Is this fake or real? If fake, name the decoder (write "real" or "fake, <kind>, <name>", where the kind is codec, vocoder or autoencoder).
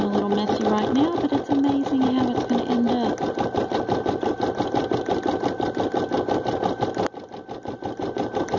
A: real